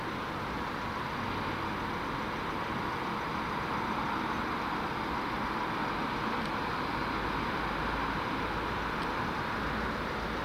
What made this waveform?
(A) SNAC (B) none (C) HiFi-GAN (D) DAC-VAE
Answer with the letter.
B